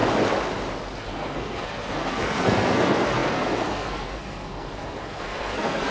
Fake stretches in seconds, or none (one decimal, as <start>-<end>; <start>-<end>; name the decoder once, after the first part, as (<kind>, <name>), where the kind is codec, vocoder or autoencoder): 1.0-5.9 (codec, SNAC)